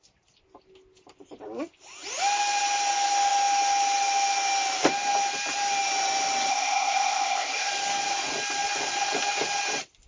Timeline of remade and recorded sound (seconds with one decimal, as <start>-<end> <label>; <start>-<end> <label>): 0.0-6.5 recorded; 6.5-7.7 remade; 7.7-10.1 recorded